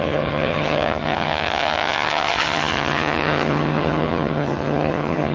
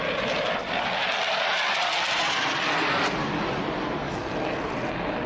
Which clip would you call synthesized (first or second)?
first